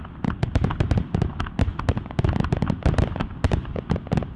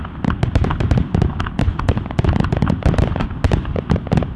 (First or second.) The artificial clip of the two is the second